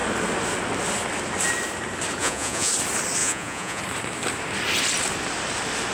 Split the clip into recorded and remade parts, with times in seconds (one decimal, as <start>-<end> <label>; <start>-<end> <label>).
0.0-2.2 recorded; 2.2-2.7 remade; 2.7-3.2 recorded; 3.2-3.8 remade; 3.8-5.9 recorded

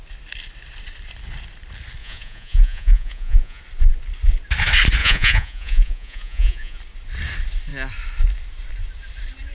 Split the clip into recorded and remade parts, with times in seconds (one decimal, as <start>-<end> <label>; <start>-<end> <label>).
0.0-2.0 recorded; 2.0-3.6 remade; 3.6-5.0 recorded; 5.0-6.8 remade; 6.8-9.5 recorded